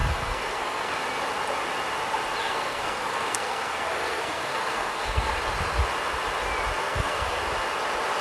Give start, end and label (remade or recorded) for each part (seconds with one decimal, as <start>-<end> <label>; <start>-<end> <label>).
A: 0.0-0.9 remade; 0.9-2.4 recorded; 2.4-5.3 remade; 5.3-6.8 recorded; 6.8-7.4 remade; 7.4-8.2 recorded